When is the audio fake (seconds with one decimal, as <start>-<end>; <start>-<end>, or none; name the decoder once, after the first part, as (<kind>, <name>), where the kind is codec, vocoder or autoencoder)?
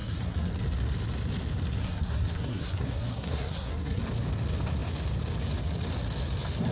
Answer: 0.0-0.5 (codec, SNAC); 1.8-4.0